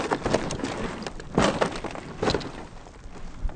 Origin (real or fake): real